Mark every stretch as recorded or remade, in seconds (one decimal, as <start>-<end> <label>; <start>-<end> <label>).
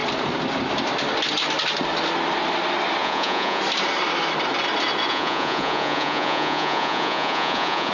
0.0-3.0 recorded; 3.0-3.6 remade; 3.6-5.1 recorded; 5.1-7.9 remade